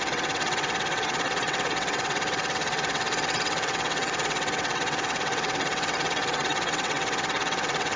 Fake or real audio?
fake